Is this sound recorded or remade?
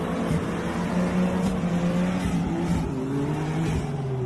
recorded